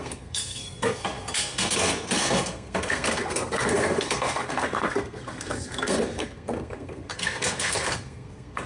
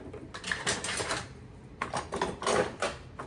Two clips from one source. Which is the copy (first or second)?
first